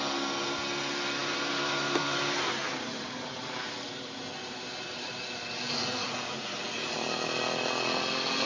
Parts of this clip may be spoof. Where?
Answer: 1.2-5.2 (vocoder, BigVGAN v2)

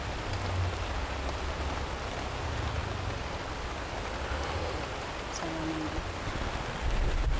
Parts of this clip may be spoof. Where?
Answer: none